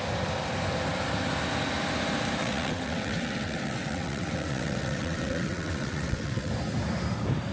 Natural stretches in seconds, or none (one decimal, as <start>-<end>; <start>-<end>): 0.0-2.4; 6.5-7.5